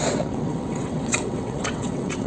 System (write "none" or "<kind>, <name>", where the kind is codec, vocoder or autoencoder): vocoder, WaveNeXt